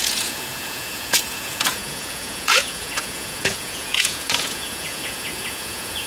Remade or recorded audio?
remade